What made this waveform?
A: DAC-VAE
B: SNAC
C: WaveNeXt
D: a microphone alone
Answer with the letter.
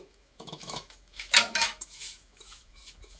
A